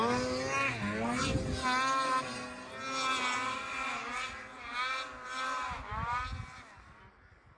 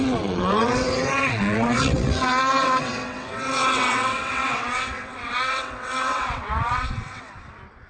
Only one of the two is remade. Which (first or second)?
second